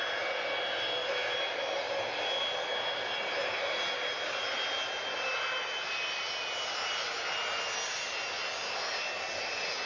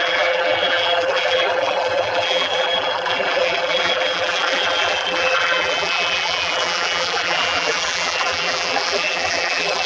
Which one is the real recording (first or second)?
first